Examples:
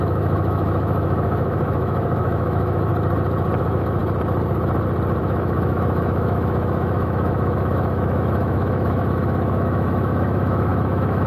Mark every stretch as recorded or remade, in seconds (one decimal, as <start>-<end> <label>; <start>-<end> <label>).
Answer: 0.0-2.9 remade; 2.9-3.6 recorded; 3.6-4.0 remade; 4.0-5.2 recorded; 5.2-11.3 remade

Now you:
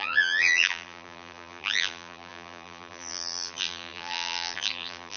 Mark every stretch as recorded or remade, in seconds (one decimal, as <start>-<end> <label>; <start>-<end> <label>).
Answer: 0.0-5.2 remade

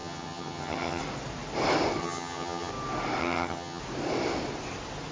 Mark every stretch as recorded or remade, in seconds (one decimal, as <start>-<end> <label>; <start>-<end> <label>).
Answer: 0.0-1.0 remade; 1.0-2.0 recorded; 2.0-2.7 remade; 2.7-3.2 recorded; 3.2-3.8 remade; 3.8-5.1 recorded

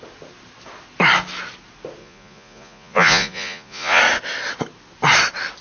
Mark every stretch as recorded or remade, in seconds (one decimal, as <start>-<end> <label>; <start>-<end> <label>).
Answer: 0.0-2.0 recorded; 2.0-4.0 remade; 4.0-5.6 recorded